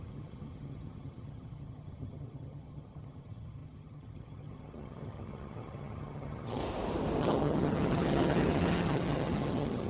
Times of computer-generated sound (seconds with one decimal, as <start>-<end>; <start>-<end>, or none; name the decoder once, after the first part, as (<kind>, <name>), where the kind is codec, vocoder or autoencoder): 0.0-6.6 (vocoder, HiFi-GAN); 7.2-9.9